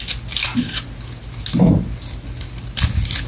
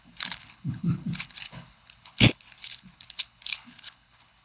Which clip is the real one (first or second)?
first